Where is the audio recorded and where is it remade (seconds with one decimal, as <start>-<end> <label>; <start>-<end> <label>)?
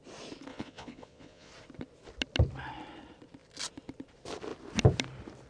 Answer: 0.0-0.5 recorded; 0.5-1.5 remade; 1.5-5.5 recorded